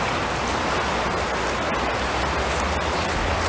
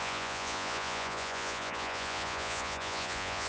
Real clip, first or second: first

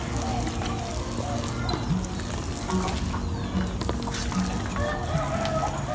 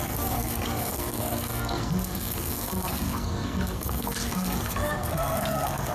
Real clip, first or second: first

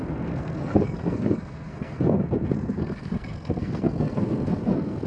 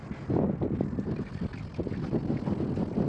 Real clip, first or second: second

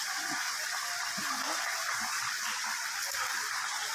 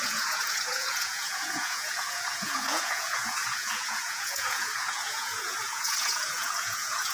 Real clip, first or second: first